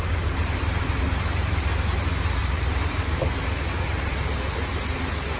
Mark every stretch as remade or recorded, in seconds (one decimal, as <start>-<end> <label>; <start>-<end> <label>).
0.0-0.4 recorded; 0.4-0.9 remade; 0.9-2.4 recorded; 2.4-3.4 remade; 3.4-5.4 recorded

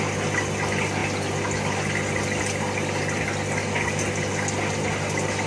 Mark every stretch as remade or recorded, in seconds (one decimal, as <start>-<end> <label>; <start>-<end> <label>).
0.0-5.5 recorded